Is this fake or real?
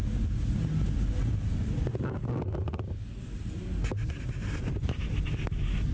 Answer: real